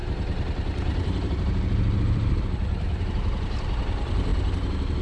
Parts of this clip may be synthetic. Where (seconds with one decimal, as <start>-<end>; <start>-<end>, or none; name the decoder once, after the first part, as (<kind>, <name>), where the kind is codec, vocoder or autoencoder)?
0.0-3.0 (vocoder, BigVGAN v2)